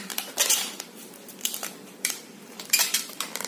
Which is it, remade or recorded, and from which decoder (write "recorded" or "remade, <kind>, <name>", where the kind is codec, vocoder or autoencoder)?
remade, vocoder, BigVGAN v2